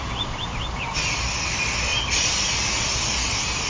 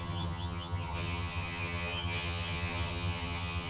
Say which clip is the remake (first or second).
second